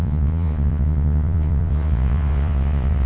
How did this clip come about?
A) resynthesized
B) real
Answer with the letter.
A